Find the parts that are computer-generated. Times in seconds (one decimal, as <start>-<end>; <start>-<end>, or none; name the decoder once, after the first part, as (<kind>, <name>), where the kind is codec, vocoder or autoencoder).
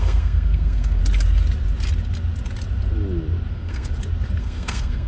0.0-1.0 (codec, SNAC); 3.5-3.9; 4.4-5.1